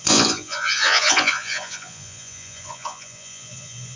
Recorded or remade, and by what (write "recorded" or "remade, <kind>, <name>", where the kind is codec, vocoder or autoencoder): remade, vocoder, Vocos